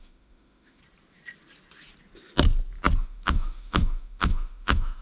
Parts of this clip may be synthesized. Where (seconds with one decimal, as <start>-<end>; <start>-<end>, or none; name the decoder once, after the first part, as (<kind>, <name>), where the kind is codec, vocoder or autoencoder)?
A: 0.0-0.8 (autoencoder, DAC-VAE); 3.0-5.0